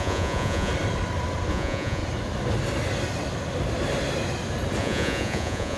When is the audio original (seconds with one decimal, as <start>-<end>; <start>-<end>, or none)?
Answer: 0.7-1.5; 2.0-4.8